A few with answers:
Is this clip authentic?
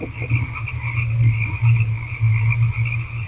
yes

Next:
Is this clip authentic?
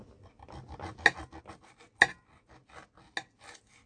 yes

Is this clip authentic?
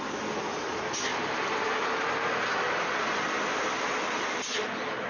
yes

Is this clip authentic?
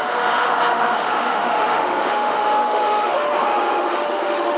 no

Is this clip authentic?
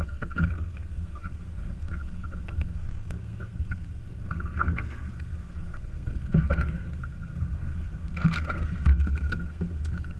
no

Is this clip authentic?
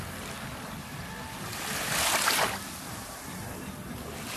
yes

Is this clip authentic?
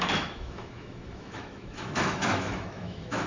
no